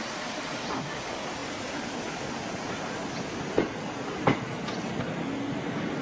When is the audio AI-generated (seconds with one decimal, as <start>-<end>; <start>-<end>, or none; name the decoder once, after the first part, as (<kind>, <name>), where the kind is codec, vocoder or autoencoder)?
none